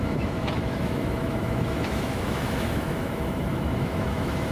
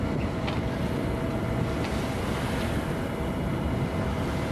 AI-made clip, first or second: first